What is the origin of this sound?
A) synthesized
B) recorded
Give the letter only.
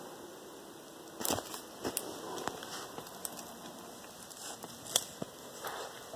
B